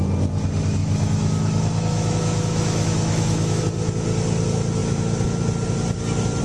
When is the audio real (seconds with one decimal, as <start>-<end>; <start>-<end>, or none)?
0.0-0.8; 3.6-6.4